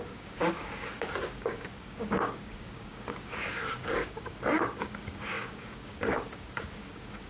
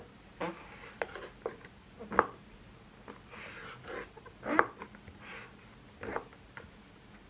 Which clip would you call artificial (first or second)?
first